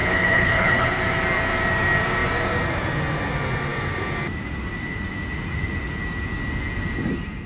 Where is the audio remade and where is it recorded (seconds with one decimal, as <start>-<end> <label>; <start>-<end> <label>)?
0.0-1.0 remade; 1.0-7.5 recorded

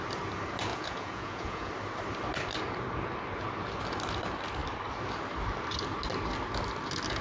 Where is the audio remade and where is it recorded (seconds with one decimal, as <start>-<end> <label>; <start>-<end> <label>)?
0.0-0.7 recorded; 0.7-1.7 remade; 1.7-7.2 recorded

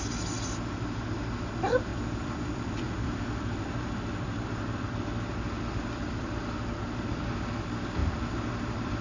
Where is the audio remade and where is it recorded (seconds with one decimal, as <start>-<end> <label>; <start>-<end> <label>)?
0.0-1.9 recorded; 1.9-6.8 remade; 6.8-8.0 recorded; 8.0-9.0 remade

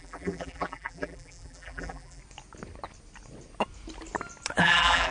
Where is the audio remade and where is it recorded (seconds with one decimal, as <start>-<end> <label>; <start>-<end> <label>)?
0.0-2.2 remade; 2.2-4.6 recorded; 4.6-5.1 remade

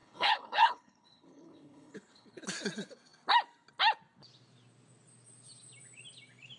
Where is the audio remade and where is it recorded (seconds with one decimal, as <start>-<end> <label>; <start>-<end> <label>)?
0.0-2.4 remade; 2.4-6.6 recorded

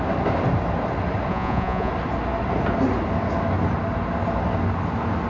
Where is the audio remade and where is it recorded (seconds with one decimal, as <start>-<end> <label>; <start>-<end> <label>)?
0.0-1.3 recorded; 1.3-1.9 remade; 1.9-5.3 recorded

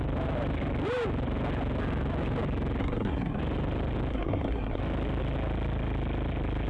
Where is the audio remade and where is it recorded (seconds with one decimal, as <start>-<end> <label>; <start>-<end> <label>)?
0.0-2.8 recorded; 2.8-3.4 remade; 3.4-4.1 recorded; 4.1-4.8 remade; 4.8-6.7 recorded